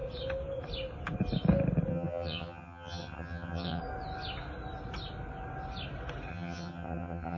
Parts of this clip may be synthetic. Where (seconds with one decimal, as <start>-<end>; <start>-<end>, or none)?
1.9-3.8; 6.3-7.4